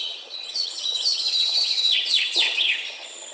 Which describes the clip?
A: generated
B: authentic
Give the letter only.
A